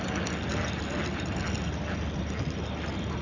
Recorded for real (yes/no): yes